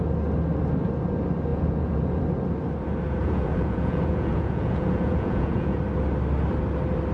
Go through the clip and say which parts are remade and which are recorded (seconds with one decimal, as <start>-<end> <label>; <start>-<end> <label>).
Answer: 0.0-1.5 recorded; 1.5-2.2 remade; 2.2-3.2 recorded; 3.2-5.8 remade; 5.8-7.1 recorded